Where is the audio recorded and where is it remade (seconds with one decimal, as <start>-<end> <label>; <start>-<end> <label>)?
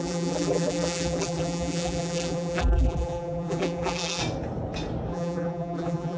0.0-4.2 remade; 4.2-5.1 recorded; 5.1-6.2 remade